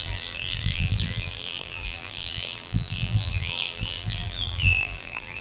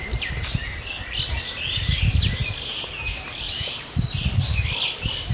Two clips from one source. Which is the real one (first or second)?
second